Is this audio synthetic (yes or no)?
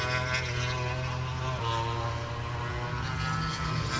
no